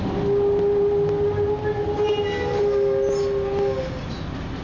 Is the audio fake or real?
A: real